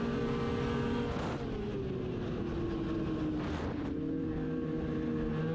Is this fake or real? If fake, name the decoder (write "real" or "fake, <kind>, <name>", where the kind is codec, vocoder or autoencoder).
real